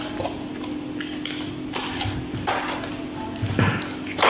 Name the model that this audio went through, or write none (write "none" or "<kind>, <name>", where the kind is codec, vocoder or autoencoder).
none